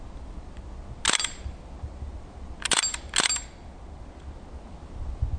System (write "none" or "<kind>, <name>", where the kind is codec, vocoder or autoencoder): none